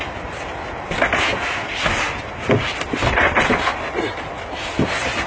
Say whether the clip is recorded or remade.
recorded